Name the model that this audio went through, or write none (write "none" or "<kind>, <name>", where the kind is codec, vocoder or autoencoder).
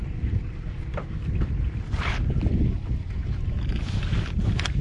none